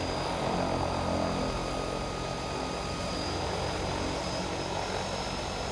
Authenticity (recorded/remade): recorded